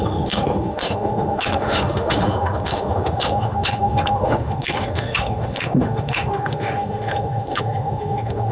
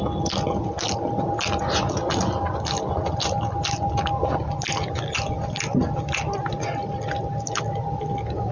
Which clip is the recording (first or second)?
second